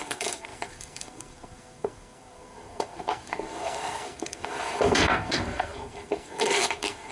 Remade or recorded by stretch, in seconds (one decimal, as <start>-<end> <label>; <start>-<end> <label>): 0.0-7.1 remade